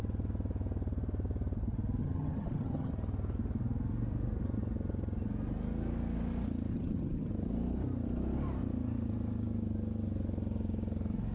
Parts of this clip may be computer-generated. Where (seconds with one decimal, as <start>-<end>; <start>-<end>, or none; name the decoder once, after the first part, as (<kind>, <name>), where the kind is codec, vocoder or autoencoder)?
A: 2.0-2.9 (vocoder, HiFi-GAN); 6.7-7.3